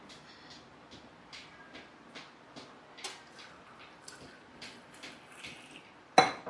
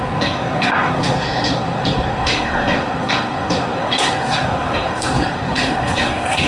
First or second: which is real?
first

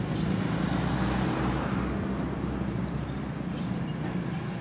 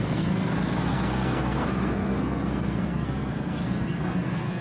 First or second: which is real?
first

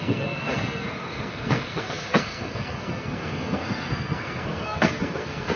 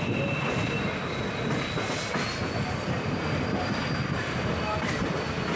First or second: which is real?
second